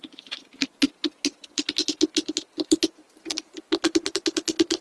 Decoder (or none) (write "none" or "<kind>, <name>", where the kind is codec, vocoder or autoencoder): none